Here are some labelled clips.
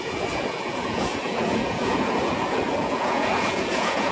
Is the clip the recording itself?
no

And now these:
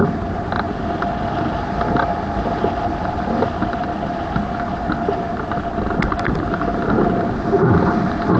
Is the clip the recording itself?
yes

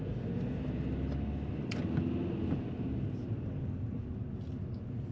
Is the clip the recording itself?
yes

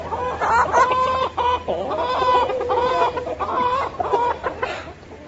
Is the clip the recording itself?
yes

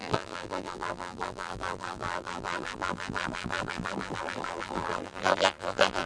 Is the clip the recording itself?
no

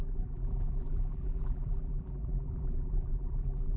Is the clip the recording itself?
no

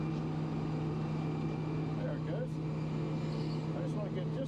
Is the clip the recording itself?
yes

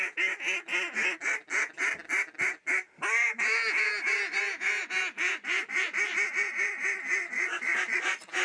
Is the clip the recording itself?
yes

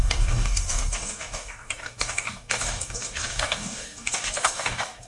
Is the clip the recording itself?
no